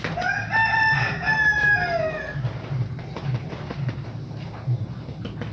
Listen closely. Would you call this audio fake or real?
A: real